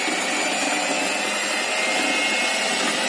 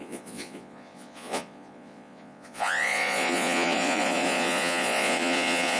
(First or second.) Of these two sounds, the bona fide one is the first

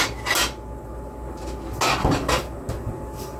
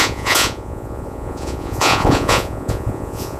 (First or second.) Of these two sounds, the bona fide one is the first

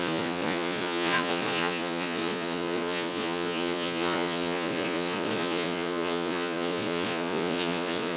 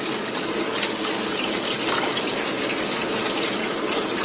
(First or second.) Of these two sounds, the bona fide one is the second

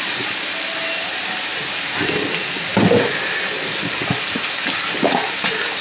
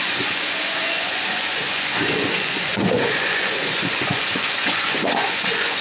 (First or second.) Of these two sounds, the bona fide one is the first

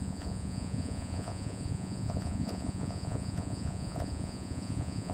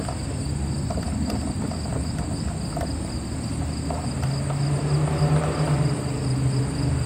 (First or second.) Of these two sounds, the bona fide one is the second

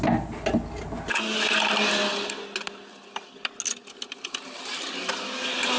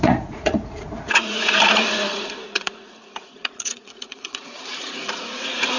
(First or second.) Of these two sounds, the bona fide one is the first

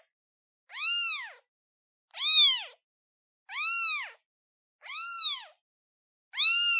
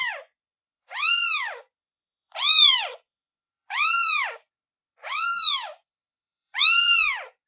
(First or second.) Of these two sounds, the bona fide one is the first